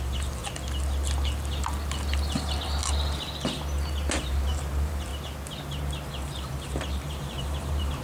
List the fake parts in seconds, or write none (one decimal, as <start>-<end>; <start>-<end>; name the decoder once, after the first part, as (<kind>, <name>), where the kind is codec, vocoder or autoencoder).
0.0-0.4 (vocoder, BigVGAN v2); 4.2-5.1; 6.1-8.0